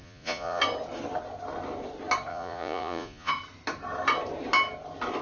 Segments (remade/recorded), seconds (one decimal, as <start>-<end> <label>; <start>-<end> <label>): 0.0-0.6 remade; 0.6-2.3 recorded; 2.3-3.3 remade; 3.3-5.2 recorded